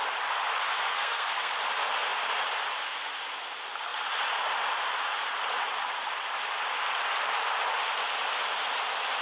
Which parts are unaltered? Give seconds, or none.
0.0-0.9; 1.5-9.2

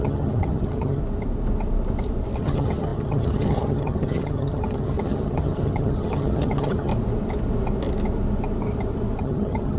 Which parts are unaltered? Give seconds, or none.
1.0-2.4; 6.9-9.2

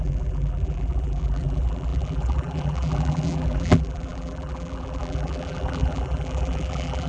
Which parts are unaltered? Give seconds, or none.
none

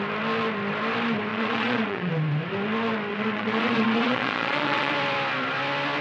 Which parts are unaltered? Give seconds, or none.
0.0-1.3; 2.1-3.1; 4.9-6.0

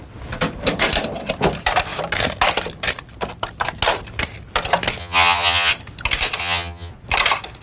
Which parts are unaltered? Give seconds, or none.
0.0-5.0; 5.7-6.4; 6.9-7.6

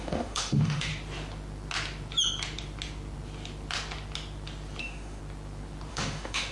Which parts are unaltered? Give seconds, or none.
0.9-4.8; 5.2-5.9

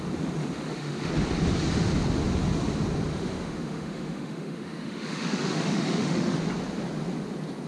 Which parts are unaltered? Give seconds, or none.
0.0-0.4; 1.1-3.1; 6.4-7.7

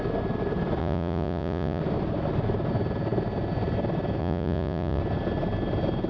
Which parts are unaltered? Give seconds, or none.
0.0-0.8; 1.8-4.2; 5.0-6.1